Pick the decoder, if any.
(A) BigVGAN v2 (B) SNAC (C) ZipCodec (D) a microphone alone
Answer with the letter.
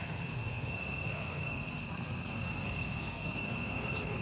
B